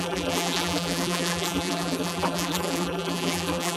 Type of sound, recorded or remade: remade